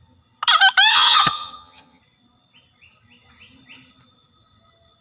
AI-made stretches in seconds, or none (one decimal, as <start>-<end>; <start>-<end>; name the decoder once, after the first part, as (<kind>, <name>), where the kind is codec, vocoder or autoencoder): 0.9-2.0 (vocoder, HiFi-GAN)